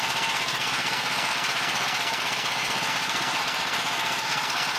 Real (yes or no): no